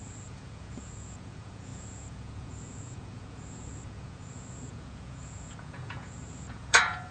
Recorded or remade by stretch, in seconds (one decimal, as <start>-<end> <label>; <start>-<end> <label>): 0.0-7.1 remade